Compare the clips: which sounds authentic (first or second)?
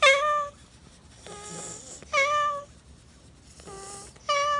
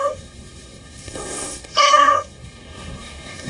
first